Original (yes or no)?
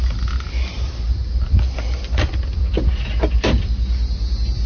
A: yes